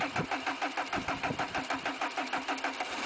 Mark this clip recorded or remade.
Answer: recorded